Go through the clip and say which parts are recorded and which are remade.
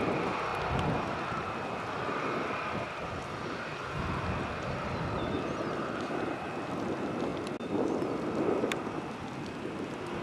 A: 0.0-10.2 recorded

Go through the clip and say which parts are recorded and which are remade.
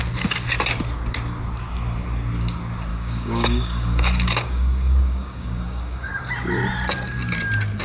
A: 0.0-2.9 recorded; 2.9-6.1 remade; 6.1-7.8 recorded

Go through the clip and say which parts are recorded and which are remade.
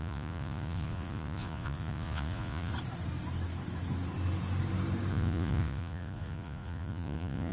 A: 0.0-2.7 remade; 2.7-5.1 recorded; 5.1-7.5 remade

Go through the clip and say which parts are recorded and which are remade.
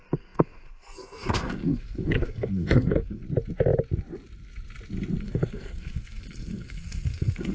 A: 0.0-3.2 remade; 3.2-5.2 recorded; 5.2-7.5 remade